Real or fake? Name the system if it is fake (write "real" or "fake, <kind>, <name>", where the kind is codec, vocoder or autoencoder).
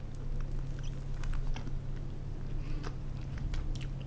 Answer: real